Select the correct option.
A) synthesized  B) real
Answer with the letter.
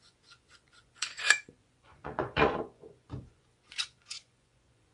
A